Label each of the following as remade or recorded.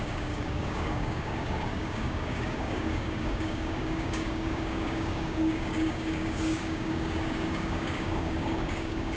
remade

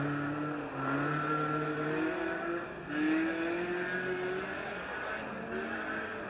recorded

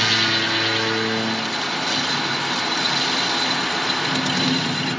recorded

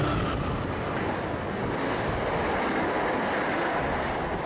recorded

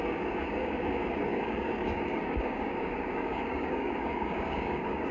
remade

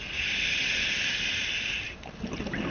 recorded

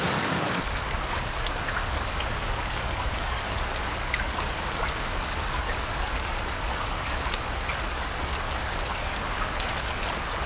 remade